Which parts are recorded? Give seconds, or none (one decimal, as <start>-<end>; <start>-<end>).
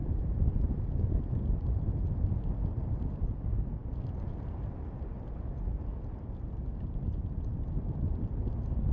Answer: 0.0-8.9